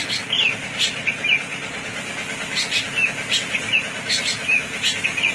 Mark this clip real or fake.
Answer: real